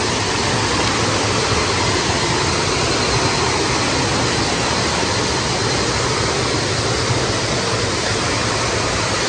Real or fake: real